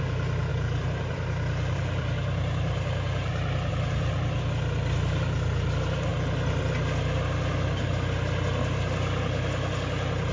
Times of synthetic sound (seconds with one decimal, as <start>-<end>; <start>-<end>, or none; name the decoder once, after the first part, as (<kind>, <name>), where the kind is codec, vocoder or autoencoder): 0.5-3.7 (vocoder, BigVGAN v2)